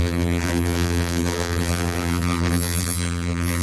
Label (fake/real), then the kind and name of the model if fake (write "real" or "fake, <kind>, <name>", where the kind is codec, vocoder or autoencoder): fake, vocoder, BigVGAN v2